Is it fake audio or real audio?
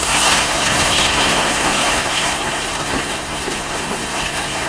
fake